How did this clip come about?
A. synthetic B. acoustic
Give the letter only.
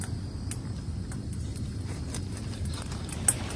B